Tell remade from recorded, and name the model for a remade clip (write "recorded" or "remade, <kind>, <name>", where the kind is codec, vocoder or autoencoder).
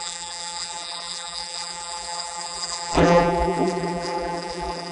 remade, vocoder, BigVGAN v2